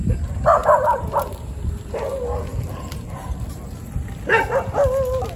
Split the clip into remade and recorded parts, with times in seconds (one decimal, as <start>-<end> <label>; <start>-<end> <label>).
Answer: 0.0-0.6 recorded; 0.6-2.0 remade; 2.0-2.5 recorded; 2.5-4.2 remade; 4.2-5.4 recorded